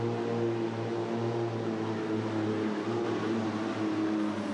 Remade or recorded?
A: recorded